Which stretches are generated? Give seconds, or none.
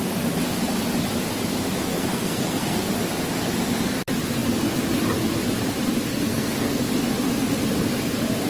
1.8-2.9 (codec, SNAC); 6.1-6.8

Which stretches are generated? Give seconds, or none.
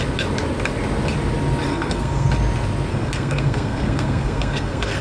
1.7-2.3 (codec, SNAC); 2.9-5.0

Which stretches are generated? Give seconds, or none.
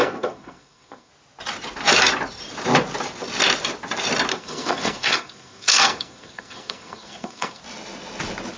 0.0-1.1 (codec, SNAC); 4.3-7.6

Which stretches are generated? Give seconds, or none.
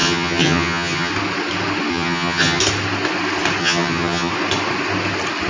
0.0-1.1 (vocoder, HiFi-GAN); 1.9-2.6; 3.6-4.3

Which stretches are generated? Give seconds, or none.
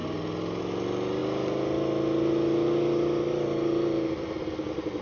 none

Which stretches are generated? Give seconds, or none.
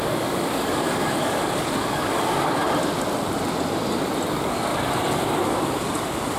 0.0-2.6 (codec, DAC); 4.3-4.7; 5.3-6.4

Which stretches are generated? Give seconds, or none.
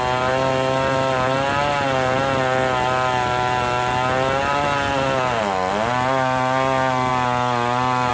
none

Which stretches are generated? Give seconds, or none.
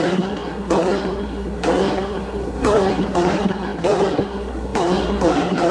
0.0-5.7 (codec, SNAC)